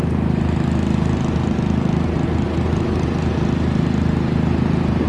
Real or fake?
real